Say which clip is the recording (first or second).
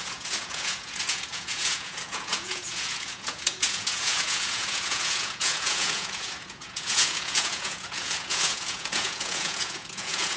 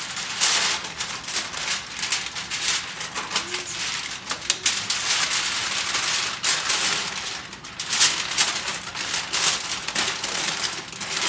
second